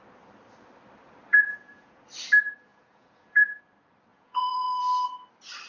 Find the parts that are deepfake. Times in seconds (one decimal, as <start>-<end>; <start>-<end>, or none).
1.3-2.0; 2.7-3.6; 4.1-4.8